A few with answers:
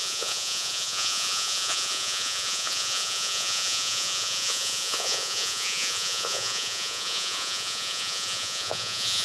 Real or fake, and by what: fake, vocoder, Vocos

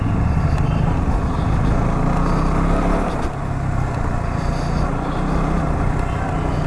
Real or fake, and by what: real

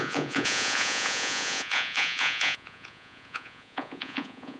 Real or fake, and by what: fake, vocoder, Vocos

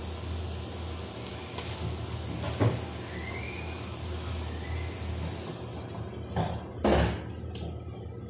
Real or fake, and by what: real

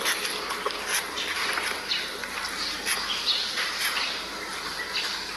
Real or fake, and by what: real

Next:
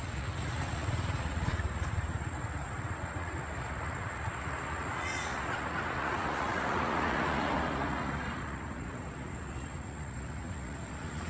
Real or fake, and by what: fake, vocoder, Vocos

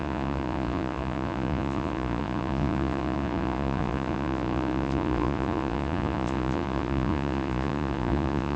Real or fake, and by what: fake, vocoder, Vocos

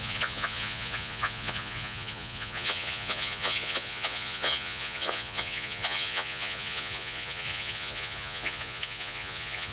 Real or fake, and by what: fake, vocoder, Vocos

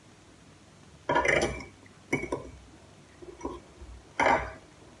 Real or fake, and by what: real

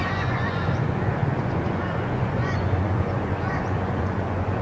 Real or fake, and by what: fake, vocoder, Vocos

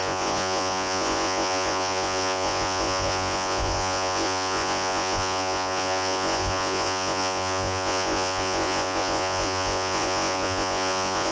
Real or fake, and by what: fake, vocoder, Vocos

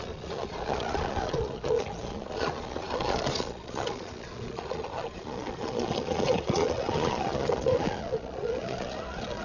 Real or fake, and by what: fake, vocoder, Vocos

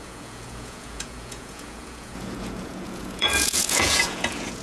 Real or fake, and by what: fake, vocoder, Vocos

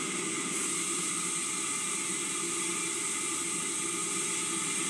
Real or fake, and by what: real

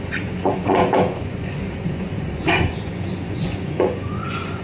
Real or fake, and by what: fake, vocoder, Vocos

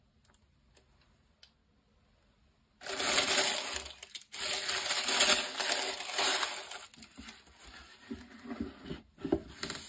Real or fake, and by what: real